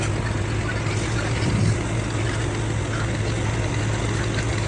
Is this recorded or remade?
recorded